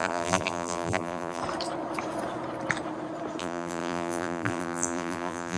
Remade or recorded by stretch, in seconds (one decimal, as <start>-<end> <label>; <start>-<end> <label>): 0.0-1.4 remade; 1.4-3.4 recorded; 3.4-5.6 remade